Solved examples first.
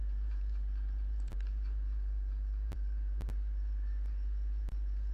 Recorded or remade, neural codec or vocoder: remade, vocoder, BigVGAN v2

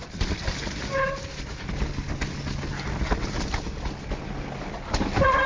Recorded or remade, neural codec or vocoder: recorded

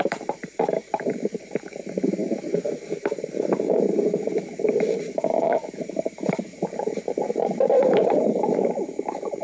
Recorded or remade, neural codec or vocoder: remade, vocoder, BigVGAN v2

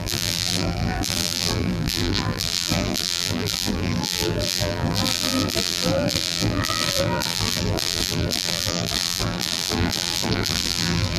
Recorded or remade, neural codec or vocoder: remade, vocoder, BigVGAN v2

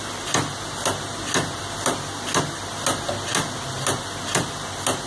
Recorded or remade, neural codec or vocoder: recorded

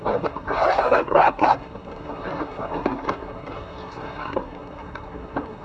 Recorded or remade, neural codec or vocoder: remade, codec, SNAC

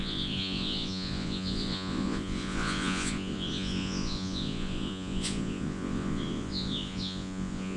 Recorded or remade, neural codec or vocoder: remade, vocoder, Vocos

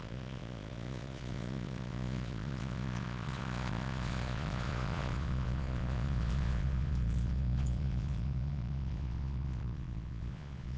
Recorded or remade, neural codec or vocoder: remade, vocoder, Vocos